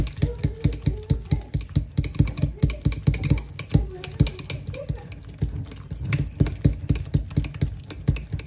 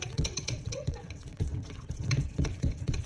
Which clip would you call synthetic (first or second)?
second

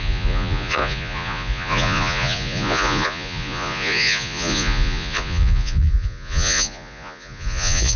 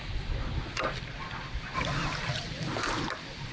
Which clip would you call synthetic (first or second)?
first